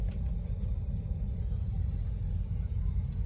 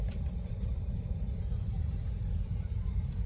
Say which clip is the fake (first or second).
second